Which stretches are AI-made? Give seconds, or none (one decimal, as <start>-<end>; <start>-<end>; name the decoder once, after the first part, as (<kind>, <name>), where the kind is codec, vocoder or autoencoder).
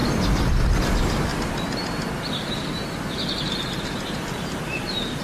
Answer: 0.0-0.7 (vocoder, BigVGAN v2)